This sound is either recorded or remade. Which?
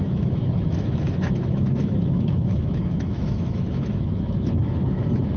remade